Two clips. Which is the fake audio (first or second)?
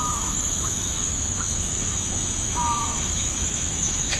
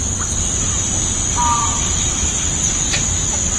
first